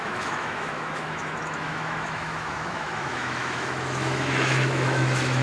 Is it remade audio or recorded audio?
remade